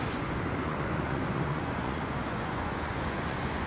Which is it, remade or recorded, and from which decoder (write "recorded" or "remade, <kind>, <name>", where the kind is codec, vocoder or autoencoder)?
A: remade, vocoder, Vocos